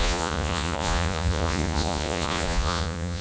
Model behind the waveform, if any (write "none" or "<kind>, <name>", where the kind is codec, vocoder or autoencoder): vocoder, Vocos